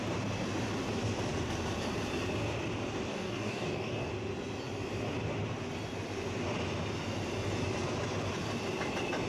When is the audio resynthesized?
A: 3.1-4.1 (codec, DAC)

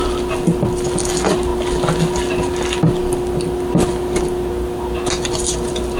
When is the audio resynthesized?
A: 3.0-3.9 (vocoder, BigVGAN v2)

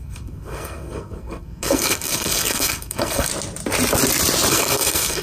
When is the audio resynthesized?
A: 0.0-3.3 (codec, SNAC); 4.5-5.2

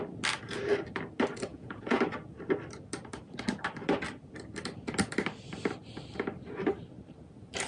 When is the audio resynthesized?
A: 1.5-2.0 (vocoder, Vocos)

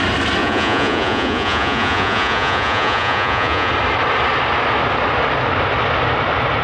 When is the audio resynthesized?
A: 0.4-3.7 (vocoder, Vocos)

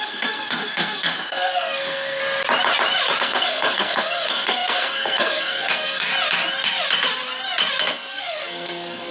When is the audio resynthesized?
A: 0.0-2.2 (codec, SNAC); 3.2-6.1; 7.8-9.1